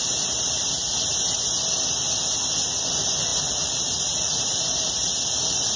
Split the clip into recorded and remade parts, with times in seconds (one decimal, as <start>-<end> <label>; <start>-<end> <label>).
0.0-1.1 remade; 1.1-2.8 recorded; 2.8-5.1 remade; 5.1-5.8 recorded